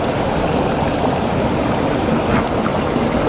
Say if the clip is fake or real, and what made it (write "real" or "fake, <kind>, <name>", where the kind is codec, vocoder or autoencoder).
real